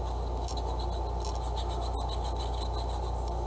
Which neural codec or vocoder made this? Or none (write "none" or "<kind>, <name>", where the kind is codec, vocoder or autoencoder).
none